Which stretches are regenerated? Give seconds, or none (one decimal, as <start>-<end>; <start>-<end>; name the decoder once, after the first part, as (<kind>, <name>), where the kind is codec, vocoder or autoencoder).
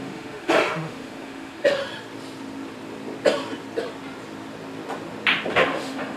0.0-1.8 (autoencoder, DAC-VAE); 5.5-6.2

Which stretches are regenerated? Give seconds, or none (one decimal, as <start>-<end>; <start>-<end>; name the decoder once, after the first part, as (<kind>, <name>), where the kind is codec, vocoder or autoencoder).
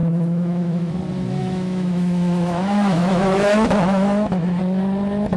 0.0-0.9 (autoencoder, DAC-VAE); 1.4-4.6